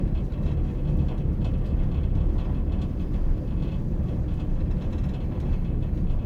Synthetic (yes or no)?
no